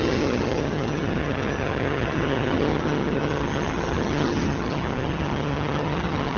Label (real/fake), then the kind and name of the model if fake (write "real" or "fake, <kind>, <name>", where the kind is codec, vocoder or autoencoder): fake, vocoder, HiFi-GAN